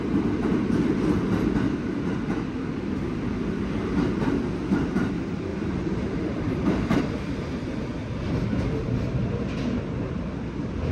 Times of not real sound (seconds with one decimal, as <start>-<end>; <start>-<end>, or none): 5.5-7.0